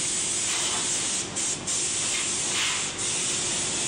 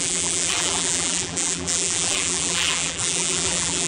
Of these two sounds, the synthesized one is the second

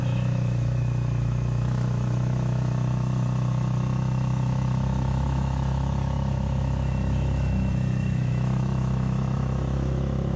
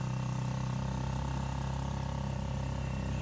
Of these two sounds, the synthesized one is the first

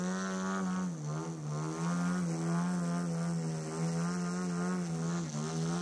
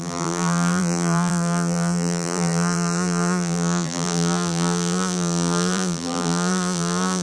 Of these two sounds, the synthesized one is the second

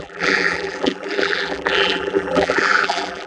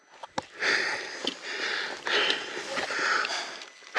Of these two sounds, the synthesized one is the first